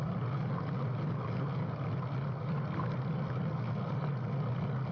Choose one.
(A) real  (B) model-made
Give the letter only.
A